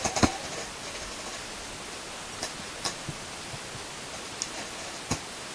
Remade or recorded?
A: recorded